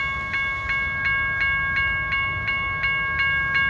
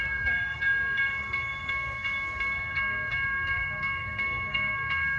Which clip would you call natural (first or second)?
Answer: first